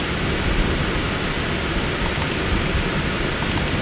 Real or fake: fake